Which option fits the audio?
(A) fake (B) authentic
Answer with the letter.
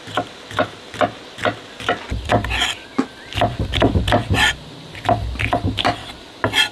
B